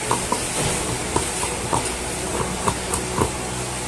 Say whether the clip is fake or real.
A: fake